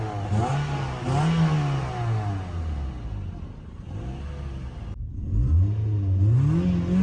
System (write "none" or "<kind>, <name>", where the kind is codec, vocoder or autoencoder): none